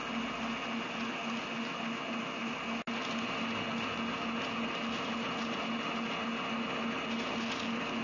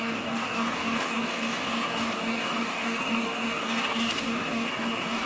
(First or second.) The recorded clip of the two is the first